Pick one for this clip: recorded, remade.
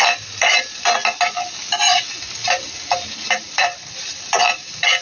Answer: recorded